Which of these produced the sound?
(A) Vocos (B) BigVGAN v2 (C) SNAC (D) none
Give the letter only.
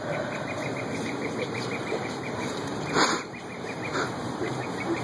B